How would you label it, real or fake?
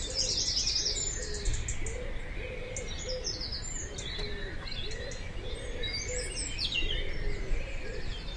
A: real